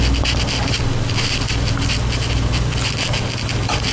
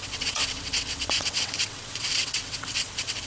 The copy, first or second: second